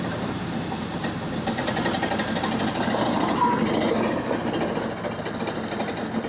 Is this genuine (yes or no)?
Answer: yes